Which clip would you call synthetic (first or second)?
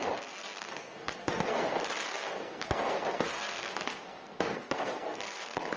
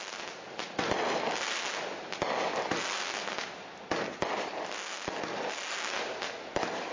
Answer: first